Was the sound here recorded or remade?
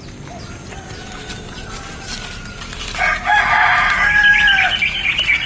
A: recorded